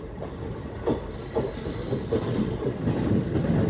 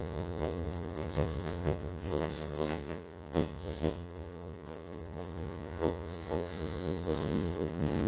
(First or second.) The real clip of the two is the first